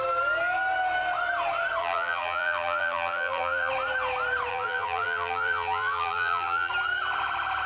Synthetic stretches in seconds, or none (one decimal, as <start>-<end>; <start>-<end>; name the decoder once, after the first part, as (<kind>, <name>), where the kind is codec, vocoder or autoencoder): 1.8-3.7 (vocoder, BigVGAN v2); 4.5-6.7